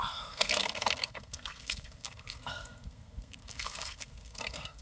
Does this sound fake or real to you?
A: fake